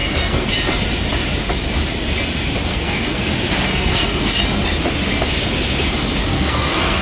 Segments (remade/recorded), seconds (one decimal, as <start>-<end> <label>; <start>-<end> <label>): 0.0-0.5 remade; 0.5-2.7 recorded; 2.7-3.3 remade; 3.3-3.7 recorded; 3.7-4.4 remade; 4.4-6.3 recorded; 6.3-7.0 remade